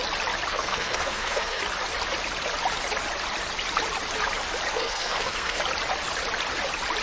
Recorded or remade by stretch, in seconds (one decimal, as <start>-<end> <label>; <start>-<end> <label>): 0.0-0.5 recorded; 0.5-1.6 remade; 1.6-4.7 recorded; 4.7-5.6 remade; 5.6-7.0 recorded